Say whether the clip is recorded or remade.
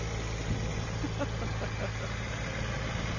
recorded